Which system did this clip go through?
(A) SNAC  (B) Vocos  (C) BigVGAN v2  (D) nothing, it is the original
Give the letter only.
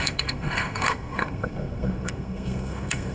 A